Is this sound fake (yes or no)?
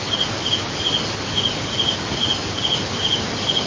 no